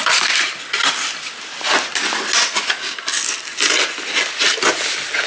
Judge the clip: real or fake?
real